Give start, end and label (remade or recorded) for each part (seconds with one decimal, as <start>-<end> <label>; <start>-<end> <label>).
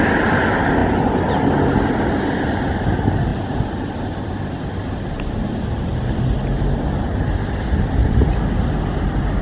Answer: 0.0-3.3 recorded; 3.3-6.6 remade; 6.6-9.4 recorded